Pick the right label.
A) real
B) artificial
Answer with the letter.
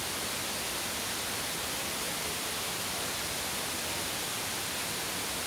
A